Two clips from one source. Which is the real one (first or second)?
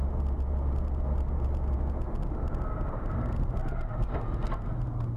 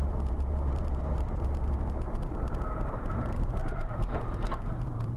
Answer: first